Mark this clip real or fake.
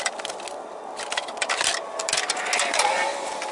real